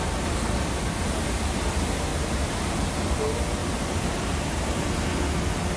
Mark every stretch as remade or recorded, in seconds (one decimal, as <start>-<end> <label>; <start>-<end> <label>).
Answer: 0.0-2.1 recorded; 2.1-3.2 remade; 3.2-3.6 recorded; 3.6-4.9 remade; 4.9-5.8 recorded